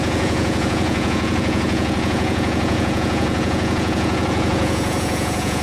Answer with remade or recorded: remade